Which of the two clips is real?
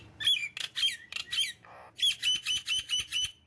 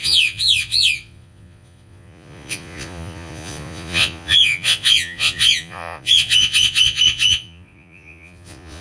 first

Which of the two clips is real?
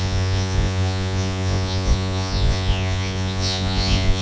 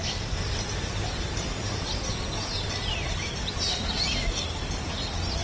second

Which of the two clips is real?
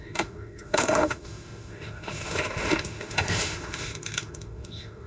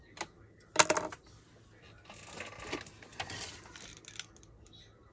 second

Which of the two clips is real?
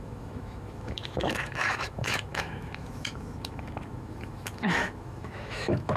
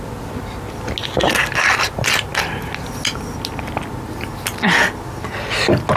second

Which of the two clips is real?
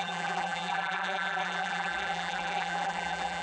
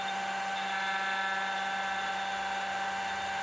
second